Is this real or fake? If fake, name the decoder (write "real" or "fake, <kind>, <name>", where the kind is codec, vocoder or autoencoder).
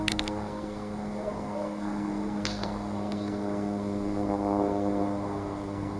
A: fake, codec, SNAC